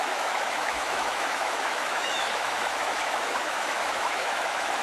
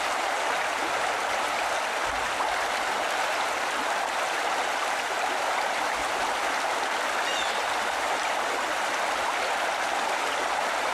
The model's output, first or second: first